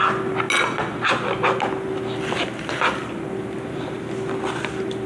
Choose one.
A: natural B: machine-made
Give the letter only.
A